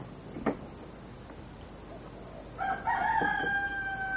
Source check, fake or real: real